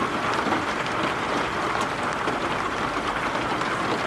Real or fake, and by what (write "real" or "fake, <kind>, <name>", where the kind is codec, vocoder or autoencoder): real